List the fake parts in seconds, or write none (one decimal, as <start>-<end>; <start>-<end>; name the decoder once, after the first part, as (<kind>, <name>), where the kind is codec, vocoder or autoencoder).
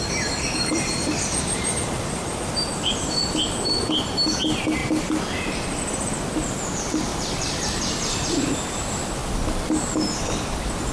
0.0-3.0 (vocoder, BigVGAN v2); 7.1-7.7